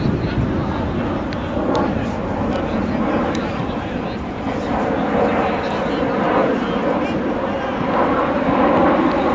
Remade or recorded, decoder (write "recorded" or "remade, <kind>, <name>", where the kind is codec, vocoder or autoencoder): recorded